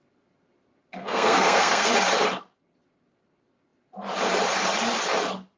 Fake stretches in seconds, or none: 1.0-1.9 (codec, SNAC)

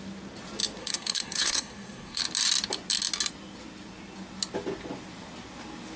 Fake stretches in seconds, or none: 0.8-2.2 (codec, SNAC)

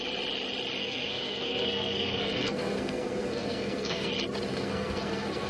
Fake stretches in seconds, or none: 0.8-4.1 (codec, SNAC); 4.5-5.5